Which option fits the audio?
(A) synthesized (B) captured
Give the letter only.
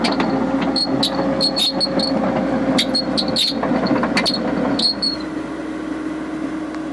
B